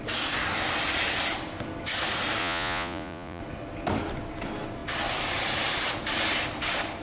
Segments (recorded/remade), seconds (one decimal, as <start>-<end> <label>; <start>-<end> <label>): 0.0-2.4 recorded; 2.4-3.4 remade; 3.4-7.0 recorded